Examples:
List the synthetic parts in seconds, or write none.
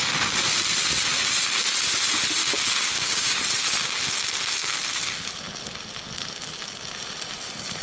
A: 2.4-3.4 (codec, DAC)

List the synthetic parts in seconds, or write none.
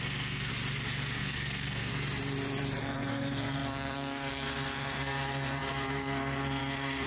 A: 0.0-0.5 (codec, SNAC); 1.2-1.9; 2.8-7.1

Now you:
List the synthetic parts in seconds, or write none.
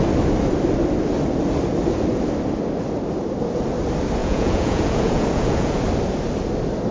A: 4.2-5.8 (vocoder, Vocos)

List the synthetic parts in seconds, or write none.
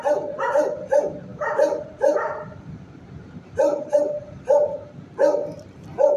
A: 0.0-6.2 (vocoder, BigVGAN v2)